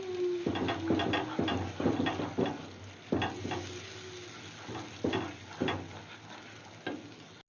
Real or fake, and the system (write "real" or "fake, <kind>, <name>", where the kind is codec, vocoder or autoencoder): real